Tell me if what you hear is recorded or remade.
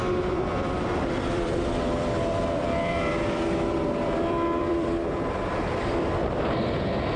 remade